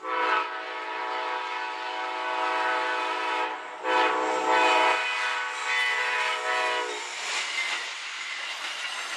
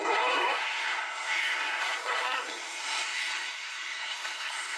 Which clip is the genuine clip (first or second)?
first